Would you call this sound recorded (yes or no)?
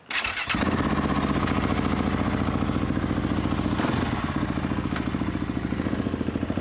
yes